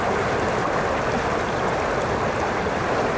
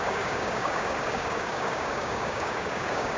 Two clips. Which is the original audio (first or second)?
first